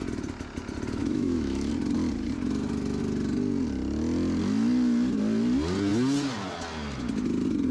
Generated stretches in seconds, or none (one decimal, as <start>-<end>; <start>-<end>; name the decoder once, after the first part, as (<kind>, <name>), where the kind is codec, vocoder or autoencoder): 1.0-1.7 (autoencoder, DAC-VAE)